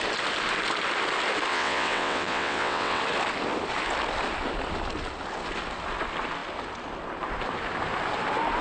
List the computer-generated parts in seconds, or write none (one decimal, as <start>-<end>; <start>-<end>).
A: 1.5-3.0